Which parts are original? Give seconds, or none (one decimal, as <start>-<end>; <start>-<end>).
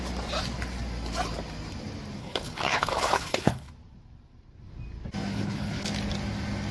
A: 0.0-2.2; 3.7-5.3; 5.9-6.7